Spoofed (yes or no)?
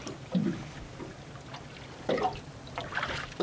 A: no